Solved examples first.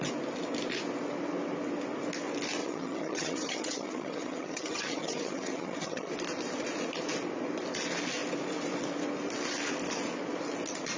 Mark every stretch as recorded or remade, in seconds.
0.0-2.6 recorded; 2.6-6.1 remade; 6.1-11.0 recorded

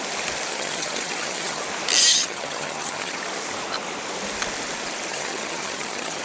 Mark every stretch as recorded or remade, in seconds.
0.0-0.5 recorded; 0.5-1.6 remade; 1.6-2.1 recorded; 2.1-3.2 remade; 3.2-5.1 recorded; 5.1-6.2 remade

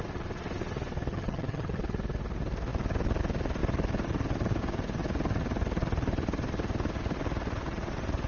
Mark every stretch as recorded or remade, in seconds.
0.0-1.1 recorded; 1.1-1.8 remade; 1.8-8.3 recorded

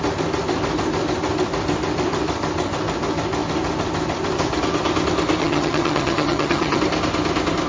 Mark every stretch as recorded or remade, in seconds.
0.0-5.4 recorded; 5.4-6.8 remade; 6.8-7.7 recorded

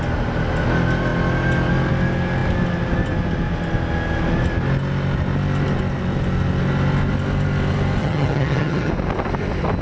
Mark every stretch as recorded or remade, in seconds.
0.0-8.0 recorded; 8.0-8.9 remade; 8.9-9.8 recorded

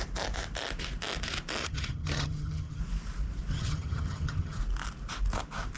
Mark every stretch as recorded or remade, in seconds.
0.0-1.6 recorded; 1.6-2.8 remade; 2.8-3.5 recorded; 3.5-4.6 remade; 4.6-5.8 recorded

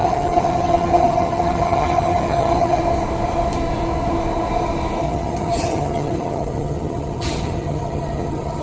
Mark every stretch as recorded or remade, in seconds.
0.0-2.8 remade; 2.8-5.0 recorded; 5.0-8.6 remade

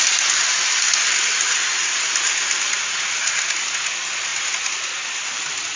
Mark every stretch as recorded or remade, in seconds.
0.0-5.8 recorded